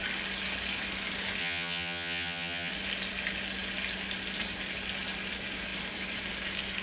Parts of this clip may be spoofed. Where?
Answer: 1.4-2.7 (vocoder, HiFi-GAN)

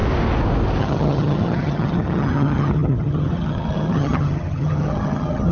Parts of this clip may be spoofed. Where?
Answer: 0.8-5.5 (vocoder, HiFi-GAN)

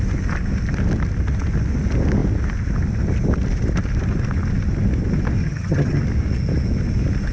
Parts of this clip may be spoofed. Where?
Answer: 5.4-6.0 (vocoder, HiFi-GAN)

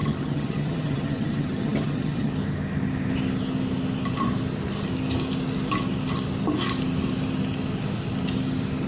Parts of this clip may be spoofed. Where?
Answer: 0.0-2.3 (vocoder, HiFi-GAN)